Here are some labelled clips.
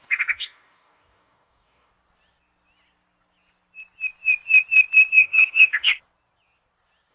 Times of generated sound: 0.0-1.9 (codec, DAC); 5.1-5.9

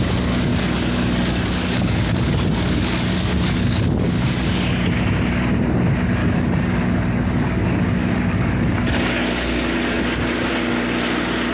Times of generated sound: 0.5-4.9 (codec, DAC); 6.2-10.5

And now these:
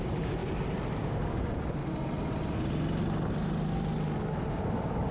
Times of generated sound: 0.0-0.4 (codec, DAC); 1.0-1.8; 4.5-5.1

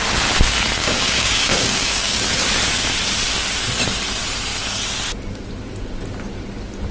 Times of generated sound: 0.8-2.2 (codec, DAC)

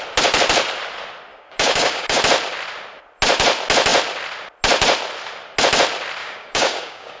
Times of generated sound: 1.3-2.2 (codec, DAC); 6.2-7.2